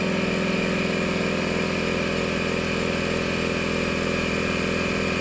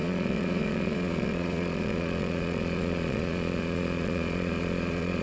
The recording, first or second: first